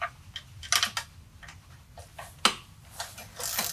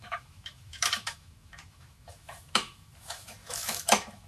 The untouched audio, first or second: first